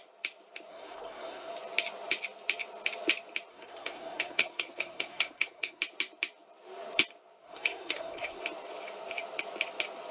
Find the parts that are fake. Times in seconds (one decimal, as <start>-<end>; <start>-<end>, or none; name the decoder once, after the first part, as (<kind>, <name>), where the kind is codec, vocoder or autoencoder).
0.7-1.5 (codec, SNAC); 3.5-5.8; 7.4-8.4